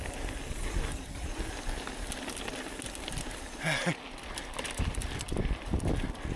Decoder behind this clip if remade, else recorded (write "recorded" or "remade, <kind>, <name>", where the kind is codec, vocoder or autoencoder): recorded